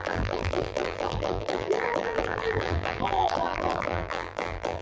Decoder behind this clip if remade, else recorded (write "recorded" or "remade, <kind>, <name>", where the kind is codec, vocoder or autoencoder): remade, vocoder, BigVGAN v2